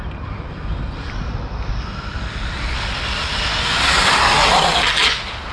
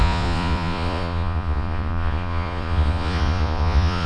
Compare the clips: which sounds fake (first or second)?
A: second